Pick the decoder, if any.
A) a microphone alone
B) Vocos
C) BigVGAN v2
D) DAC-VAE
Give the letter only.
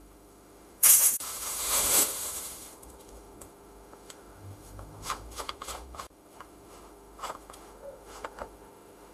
D